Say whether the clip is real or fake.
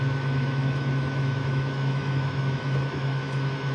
fake